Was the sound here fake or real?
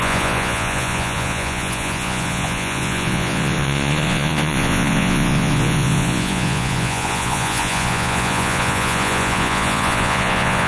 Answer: fake